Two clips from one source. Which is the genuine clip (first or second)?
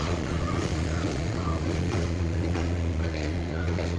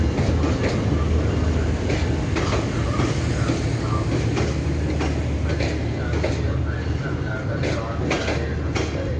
second